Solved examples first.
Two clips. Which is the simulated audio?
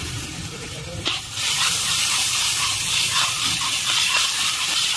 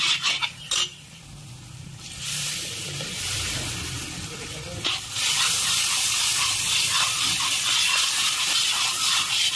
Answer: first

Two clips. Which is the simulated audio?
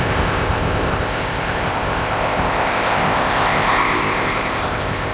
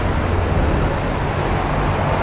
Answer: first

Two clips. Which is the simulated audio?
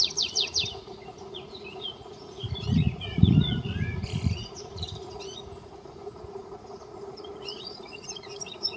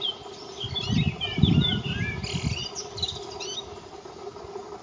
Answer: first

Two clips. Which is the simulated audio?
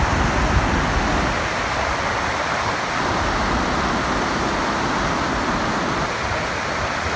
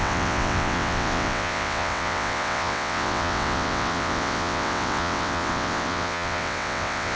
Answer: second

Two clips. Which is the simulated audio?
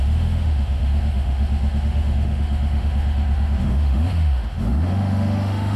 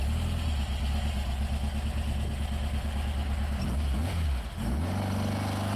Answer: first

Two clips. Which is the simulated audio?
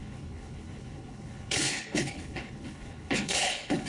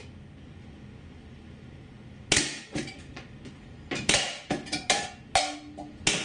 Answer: first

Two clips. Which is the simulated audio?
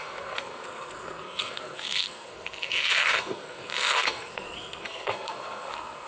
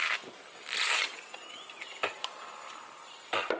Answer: first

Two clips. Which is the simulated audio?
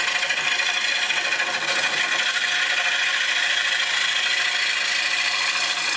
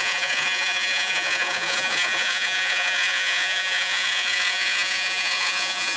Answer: second